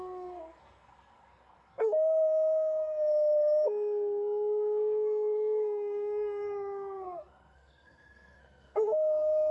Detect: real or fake fake